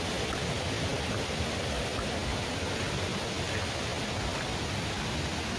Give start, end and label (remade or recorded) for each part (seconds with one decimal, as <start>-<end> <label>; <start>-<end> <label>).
0.0-5.6 recorded